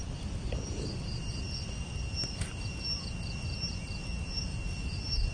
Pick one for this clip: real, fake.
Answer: real